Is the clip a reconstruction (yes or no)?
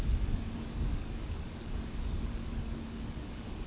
yes